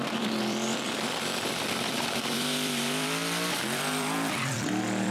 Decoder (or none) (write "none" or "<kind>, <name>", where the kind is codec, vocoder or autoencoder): vocoder, BigVGAN v2